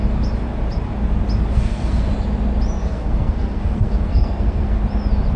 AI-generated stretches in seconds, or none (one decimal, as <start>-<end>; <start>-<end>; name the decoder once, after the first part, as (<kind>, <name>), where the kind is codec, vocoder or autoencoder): 1.5-2.1 (codec, SNAC); 2.8-4.8